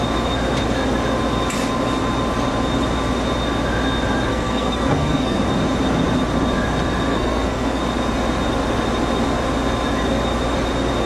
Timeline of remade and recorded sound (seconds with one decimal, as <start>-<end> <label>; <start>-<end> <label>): 0.0-4.3 recorded; 4.3-5.4 remade; 5.4-7.1 recorded; 7.1-7.8 remade; 7.8-11.1 recorded